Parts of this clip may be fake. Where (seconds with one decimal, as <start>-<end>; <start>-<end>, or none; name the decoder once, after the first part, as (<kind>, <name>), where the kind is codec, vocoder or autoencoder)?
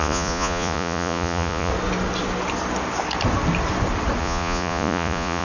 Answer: 0.0-1.7 (vocoder, Vocos); 4.2-5.4